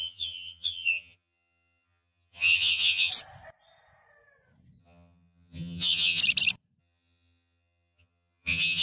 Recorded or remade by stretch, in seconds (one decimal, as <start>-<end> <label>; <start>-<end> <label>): 0.0-3.1 remade; 3.1-4.8 recorded; 4.8-6.2 remade; 6.2-6.8 recorded; 6.8-8.8 remade